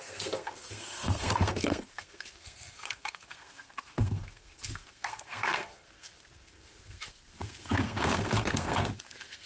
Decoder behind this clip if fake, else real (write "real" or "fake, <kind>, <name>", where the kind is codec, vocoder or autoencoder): fake, codec, SNAC